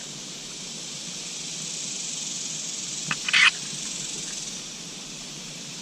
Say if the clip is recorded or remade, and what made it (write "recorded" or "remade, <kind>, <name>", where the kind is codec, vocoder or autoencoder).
recorded